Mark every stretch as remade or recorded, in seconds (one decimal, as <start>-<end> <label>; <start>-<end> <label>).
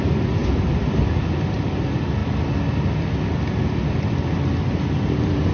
0.0-0.4 remade; 0.4-1.2 recorded; 1.2-2.2 remade; 2.2-5.1 recorded; 5.1-5.5 remade